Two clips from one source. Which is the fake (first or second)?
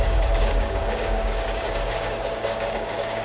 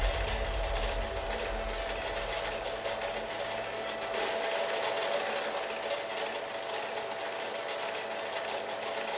first